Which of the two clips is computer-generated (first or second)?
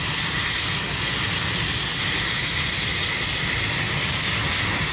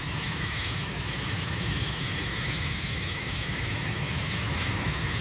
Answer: second